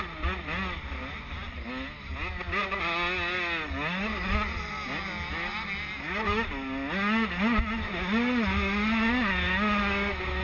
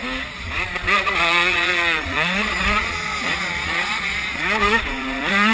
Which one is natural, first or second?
first